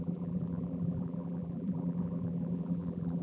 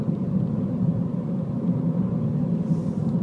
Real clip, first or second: second